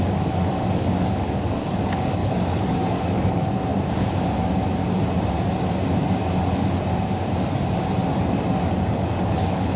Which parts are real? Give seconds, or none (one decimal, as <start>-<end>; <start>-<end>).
3.7-8.4